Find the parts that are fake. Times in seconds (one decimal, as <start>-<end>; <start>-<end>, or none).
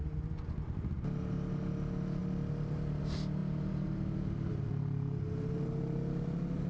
none